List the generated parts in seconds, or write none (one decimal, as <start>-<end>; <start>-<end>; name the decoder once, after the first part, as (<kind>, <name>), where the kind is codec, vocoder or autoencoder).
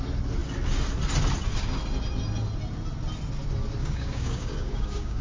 3.8-5.2 (codec, DAC)